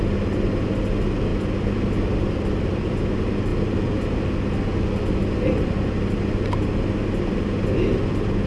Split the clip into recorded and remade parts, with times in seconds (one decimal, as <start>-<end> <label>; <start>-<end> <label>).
0.0-1.3 recorded; 1.3-3.1 remade; 3.1-8.5 recorded